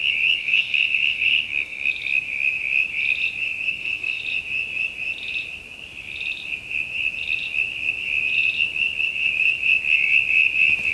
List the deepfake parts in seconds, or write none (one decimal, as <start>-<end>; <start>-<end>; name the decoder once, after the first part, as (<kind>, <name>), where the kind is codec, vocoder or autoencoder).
0.4-1.9 (codec, SNAC); 3.7-4.2